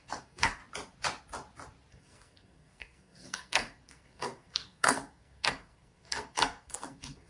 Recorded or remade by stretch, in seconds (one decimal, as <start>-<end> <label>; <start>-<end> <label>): 0.0-0.6 remade; 0.6-1.9 recorded; 1.9-7.3 remade